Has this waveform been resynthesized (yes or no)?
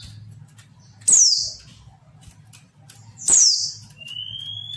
no